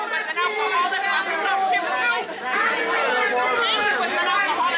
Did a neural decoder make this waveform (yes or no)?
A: no